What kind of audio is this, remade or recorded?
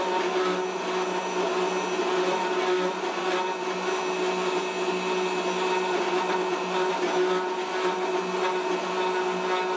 recorded